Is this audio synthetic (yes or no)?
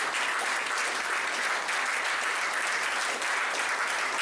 no